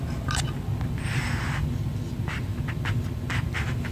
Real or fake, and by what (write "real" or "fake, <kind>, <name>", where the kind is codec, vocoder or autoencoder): real